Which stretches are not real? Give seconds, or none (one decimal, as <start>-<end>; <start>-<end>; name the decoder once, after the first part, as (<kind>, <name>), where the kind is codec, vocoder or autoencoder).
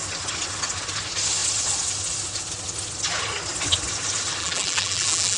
4.4-5.4 (vocoder, BigVGAN v2)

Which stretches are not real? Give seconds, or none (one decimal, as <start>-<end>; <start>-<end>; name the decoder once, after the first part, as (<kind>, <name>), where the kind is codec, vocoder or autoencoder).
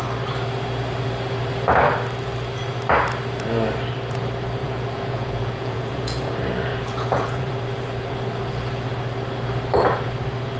4.6-6.3 (vocoder, Vocos); 6.7-7.5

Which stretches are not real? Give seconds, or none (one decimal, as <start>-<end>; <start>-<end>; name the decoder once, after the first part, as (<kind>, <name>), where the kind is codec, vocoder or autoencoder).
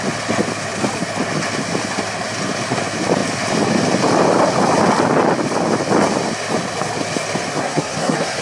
7.6-8.4 (codec, SNAC)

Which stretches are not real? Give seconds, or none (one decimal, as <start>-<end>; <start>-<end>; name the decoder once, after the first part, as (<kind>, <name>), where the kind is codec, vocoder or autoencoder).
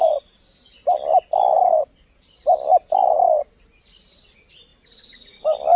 1.1-3.5 (vocoder, BigVGAN v2); 4.7-5.8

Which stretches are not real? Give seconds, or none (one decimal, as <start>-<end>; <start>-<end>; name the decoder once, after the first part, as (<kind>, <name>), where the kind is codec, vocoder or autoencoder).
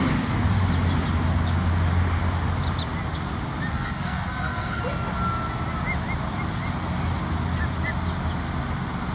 3.7-4.8 (codec, SNAC)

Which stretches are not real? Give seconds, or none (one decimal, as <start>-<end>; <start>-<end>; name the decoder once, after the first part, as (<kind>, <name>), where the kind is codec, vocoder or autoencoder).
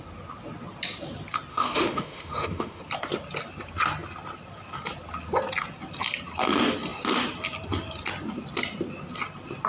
1.5-2.8 (autoencoder, DAC-VAE)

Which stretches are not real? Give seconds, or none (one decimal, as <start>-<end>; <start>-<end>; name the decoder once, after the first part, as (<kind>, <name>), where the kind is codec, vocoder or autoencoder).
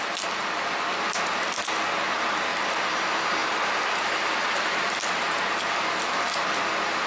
none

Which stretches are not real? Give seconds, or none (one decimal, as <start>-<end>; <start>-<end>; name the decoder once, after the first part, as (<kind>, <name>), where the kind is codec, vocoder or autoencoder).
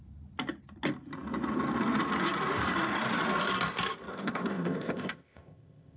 4.1-6.0 (codec, ZipCodec)